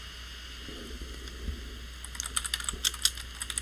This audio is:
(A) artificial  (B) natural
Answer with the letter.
B